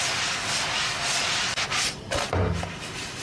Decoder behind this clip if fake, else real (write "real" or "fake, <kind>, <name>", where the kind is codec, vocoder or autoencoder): real